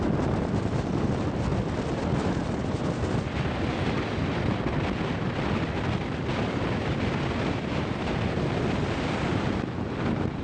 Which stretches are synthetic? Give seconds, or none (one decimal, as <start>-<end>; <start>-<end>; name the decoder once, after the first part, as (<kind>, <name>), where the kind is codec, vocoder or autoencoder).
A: 1.5-4.2 (vocoder, BigVGAN v2); 6.3-7.8